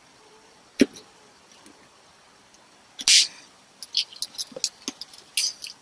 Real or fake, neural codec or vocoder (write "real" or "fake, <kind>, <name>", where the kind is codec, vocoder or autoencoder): real